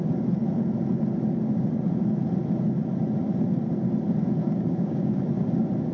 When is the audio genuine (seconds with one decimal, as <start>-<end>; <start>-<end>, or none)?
0.0-4.4; 5.2-5.9